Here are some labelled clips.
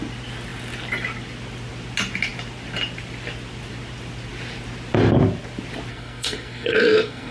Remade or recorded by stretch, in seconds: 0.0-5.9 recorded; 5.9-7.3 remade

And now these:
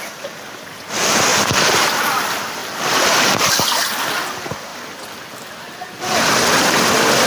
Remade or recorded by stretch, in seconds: 0.0-1.3 recorded; 1.3-2.0 remade; 2.0-2.6 recorded; 2.6-3.5 remade; 3.5-7.3 recorded

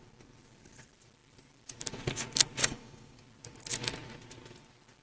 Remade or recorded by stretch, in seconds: 0.0-2.6 recorded; 2.6-3.2 remade; 3.2-5.0 recorded

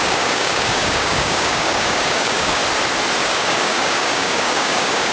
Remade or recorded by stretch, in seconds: 0.0-2.6 remade; 2.6-3.2 recorded; 3.2-5.1 remade